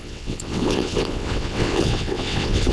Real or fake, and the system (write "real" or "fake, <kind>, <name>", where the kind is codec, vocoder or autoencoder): fake, vocoder, WaveNeXt